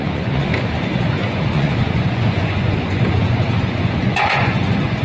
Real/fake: fake